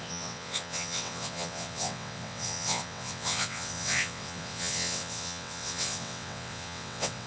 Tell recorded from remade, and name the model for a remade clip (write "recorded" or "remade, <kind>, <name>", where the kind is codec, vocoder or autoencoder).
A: remade, vocoder, WaveNeXt